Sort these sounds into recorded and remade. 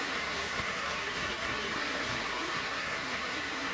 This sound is remade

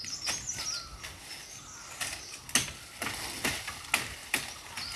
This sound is recorded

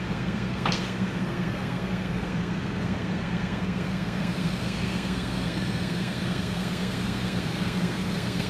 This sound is remade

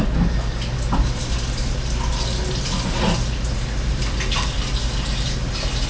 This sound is recorded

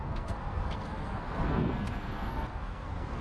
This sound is remade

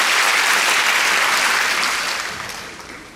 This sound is recorded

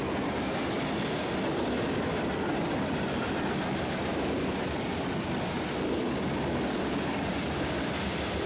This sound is recorded